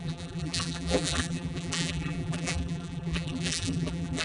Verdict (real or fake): fake